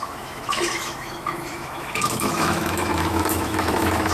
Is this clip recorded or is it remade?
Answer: remade